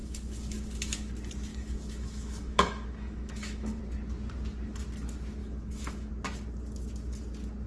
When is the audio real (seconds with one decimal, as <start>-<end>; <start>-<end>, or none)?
1.1-1.5; 3.8-5.4; 6.1-7.7